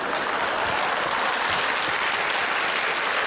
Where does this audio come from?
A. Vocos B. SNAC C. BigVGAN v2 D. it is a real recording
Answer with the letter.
D